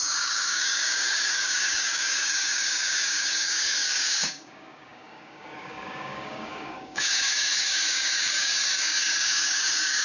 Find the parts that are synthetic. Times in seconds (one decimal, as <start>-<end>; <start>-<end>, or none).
0.0-10.0